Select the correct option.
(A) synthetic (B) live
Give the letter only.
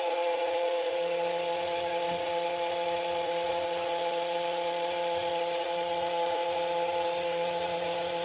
A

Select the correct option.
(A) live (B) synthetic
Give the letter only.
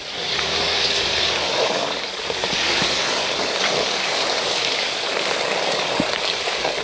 B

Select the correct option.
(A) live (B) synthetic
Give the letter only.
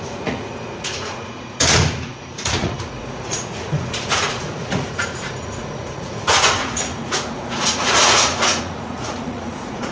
B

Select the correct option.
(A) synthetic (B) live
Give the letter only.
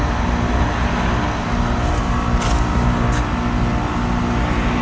B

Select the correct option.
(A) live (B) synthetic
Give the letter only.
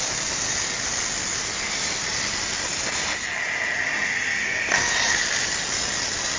A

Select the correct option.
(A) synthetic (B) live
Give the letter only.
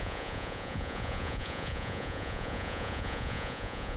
A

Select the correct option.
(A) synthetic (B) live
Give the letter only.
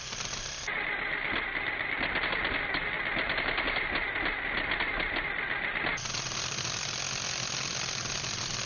B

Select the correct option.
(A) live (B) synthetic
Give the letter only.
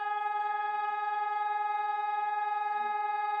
B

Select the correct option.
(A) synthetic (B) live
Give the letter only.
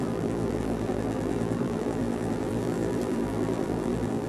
A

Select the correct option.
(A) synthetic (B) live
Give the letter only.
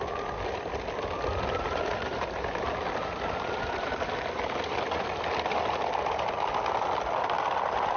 B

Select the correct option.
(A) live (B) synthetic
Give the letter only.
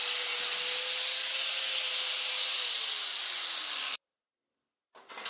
A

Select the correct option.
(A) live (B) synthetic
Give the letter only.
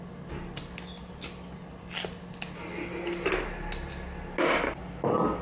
A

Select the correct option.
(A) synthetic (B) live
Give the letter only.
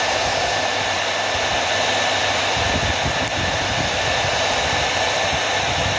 B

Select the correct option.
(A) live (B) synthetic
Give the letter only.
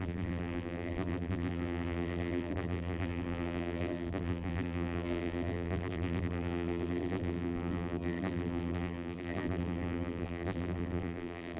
B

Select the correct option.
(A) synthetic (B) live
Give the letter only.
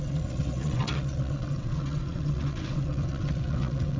A